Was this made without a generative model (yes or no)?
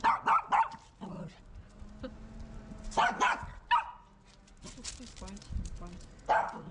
yes